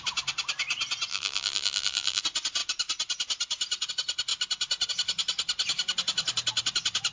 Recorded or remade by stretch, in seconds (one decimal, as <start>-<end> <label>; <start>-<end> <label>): 0.0-1.1 recorded; 1.1-2.2 remade; 2.2-7.1 recorded